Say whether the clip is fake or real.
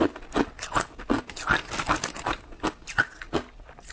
real